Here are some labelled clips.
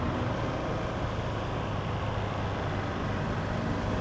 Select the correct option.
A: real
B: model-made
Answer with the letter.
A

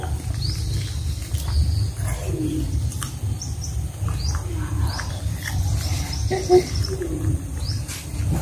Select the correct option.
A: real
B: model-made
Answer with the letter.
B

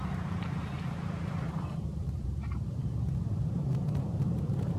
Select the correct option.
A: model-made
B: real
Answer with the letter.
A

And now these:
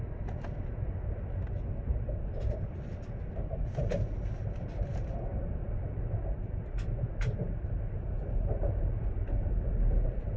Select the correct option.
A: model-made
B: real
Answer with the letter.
B